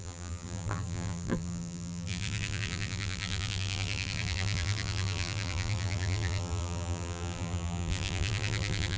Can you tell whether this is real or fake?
fake